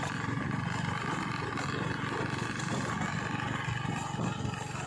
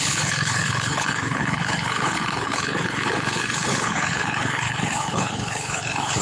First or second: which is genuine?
first